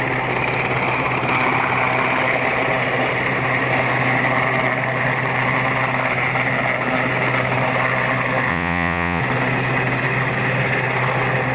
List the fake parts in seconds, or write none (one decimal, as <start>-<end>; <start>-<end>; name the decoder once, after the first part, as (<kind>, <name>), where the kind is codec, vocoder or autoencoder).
8.5-9.2 (vocoder, Vocos)